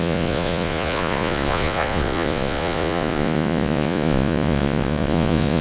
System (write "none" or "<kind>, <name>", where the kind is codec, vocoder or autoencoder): vocoder, Vocos